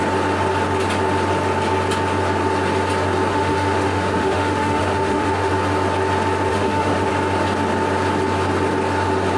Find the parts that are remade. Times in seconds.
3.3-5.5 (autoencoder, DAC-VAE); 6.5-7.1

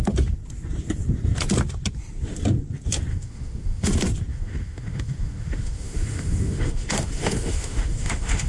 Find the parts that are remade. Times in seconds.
3.1-3.9 (autoencoder, DAC-VAE); 4.3-8.5

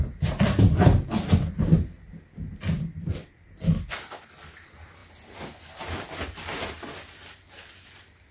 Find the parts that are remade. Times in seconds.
none

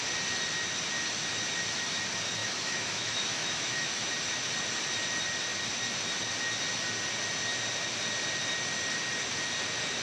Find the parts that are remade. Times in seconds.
2.4-4.1 (autoencoder, DAC-VAE)